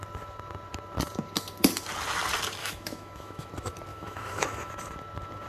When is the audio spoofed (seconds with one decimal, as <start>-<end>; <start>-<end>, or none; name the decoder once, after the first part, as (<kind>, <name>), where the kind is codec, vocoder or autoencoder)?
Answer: 2.6-3.5 (autoencoder, DAC-VAE); 3.9-4.7